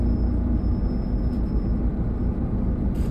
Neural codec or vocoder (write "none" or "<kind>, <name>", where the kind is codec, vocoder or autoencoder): none